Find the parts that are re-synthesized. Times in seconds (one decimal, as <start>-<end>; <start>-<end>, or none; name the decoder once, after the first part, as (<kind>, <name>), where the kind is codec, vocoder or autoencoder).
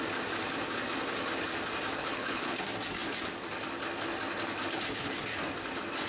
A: 2.0-2.6 (codec, HILCodec)